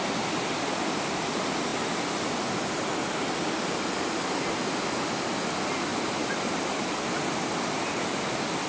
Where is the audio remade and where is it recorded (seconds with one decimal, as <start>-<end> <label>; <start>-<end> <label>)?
0.0-5.9 recorded; 5.9-6.5 remade; 6.5-8.7 recorded

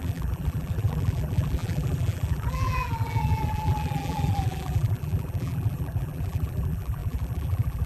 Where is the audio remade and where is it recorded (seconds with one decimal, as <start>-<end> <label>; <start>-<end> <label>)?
0.0-7.9 remade

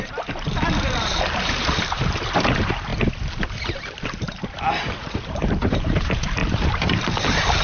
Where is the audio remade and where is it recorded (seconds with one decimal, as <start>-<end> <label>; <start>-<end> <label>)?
0.0-2.9 remade; 2.9-4.7 recorded; 4.7-7.6 remade

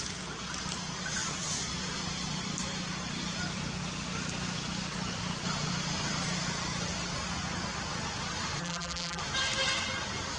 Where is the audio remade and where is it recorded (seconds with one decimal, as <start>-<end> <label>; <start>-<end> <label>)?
0.0-8.6 recorded; 8.6-9.2 remade; 9.2-10.4 recorded

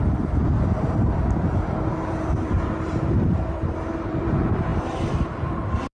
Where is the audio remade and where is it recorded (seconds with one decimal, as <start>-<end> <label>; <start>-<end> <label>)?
0.0-5.9 remade

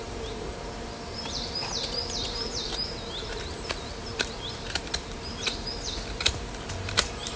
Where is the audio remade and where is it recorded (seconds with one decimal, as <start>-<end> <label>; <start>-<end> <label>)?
0.0-7.4 remade

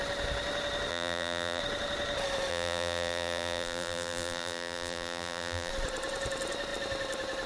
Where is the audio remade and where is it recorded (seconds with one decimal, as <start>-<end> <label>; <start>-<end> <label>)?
0.0-0.9 recorded; 0.9-1.6 remade; 1.6-2.5 recorded; 2.5-5.7 remade; 5.7-7.5 recorded

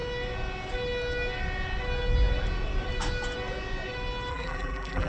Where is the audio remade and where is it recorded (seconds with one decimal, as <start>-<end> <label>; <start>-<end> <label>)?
0.0-4.3 recorded; 4.3-5.1 remade